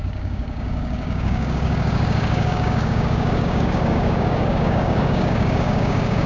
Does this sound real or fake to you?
fake